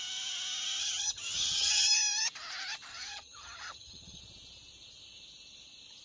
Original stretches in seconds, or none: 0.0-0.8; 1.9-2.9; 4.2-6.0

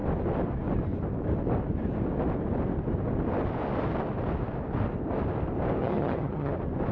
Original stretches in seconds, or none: 0.0-5.8; 6.5-6.9